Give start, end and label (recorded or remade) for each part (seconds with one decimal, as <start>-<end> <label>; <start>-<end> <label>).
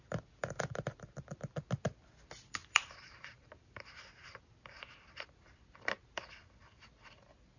0.0-2.6 recorded; 2.6-4.0 remade; 4.0-7.6 recorded